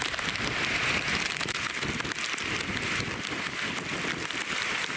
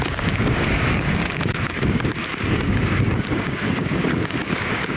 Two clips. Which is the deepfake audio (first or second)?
second